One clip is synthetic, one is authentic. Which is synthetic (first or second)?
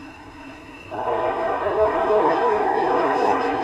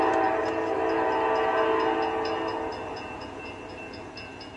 first